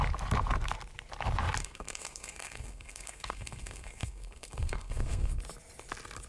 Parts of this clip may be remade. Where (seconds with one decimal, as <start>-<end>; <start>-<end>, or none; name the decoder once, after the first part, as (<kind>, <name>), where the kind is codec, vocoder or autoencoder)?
1.6-5.4 (codec, SNAC)